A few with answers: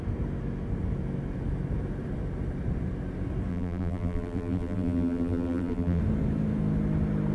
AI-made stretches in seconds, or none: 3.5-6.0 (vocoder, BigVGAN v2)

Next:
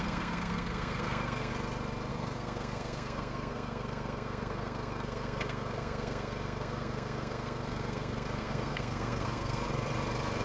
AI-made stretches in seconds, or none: 0.0-1.5 (codec, SNAC); 2.1-9.6

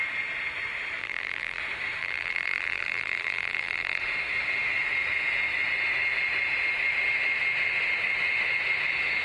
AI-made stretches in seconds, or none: 1.0-1.6 (vocoder, BigVGAN v2); 2.0-4.0

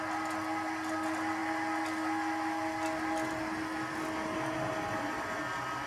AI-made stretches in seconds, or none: none

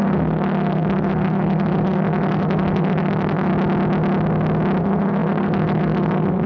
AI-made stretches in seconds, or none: 0.0-3.5 (codec, SNAC); 4.8-6.5